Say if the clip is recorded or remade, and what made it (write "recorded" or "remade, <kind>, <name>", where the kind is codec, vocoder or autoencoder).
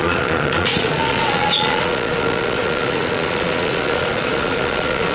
remade, vocoder, Vocos